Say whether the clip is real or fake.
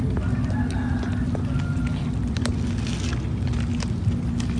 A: real